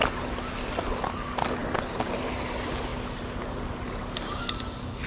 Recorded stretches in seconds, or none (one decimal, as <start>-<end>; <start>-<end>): 0.0-5.1